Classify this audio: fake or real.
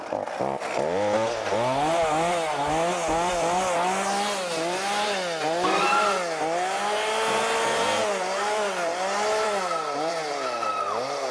real